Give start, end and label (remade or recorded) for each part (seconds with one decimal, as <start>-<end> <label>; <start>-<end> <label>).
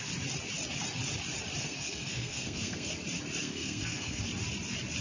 0.0-1.6 recorded; 1.6-2.9 remade; 2.9-3.4 recorded; 3.4-4.2 remade; 4.2-5.0 recorded